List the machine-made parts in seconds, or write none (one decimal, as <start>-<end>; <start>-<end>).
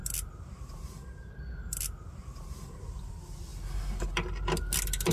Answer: none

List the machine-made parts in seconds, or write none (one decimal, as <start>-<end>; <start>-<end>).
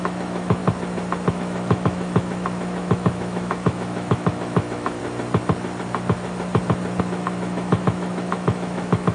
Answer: 0.0-0.6; 1.3-5.0; 7.0-9.1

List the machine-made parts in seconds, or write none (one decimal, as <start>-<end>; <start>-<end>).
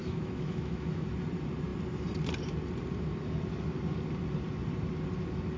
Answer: 0.0-1.1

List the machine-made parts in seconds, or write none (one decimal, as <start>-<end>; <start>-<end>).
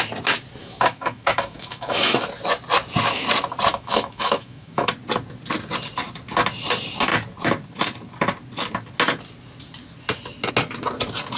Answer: 0.6-2.2; 3.7-4.9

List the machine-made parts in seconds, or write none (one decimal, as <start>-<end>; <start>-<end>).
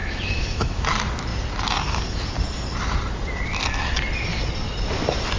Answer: 0.0-0.8